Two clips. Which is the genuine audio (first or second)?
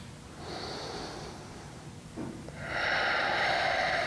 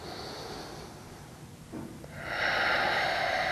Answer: second